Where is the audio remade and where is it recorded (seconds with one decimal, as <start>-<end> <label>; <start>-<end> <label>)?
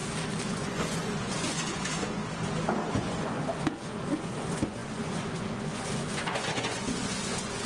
0.0-0.5 recorded; 0.5-2.2 remade; 2.2-2.9 recorded; 2.9-7.7 remade